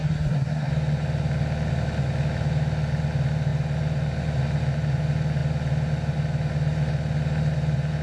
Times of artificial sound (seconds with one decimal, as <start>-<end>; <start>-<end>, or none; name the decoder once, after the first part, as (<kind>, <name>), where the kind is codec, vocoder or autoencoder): 0.0-0.7 (codec, SNAC)